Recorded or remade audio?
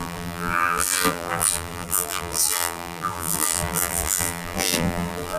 remade